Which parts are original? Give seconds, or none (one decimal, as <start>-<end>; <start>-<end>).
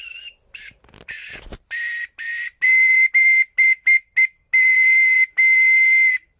0.0-6.4